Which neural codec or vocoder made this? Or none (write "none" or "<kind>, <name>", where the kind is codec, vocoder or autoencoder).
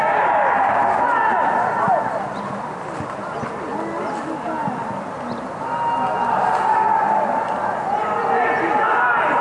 none